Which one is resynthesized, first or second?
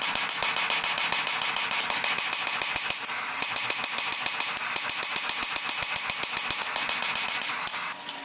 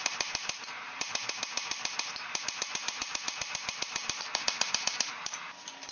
second